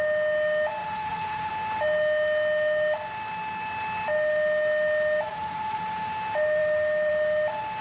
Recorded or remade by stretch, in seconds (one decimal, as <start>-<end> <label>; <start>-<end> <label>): 0.0-0.8 recorded; 0.8-1.5 remade; 1.5-5.3 recorded; 5.3-5.8 remade; 5.8-7.8 recorded